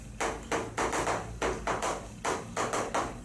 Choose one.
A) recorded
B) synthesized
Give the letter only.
A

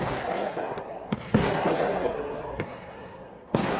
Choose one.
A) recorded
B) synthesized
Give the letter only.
B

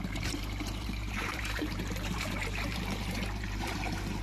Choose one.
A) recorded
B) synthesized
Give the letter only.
B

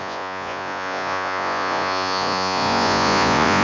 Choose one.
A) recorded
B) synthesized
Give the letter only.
B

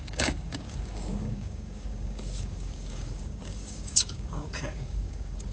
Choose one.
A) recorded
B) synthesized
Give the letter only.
B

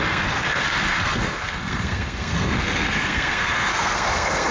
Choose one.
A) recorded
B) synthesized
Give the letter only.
B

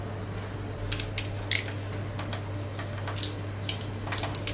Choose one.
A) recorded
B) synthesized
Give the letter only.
A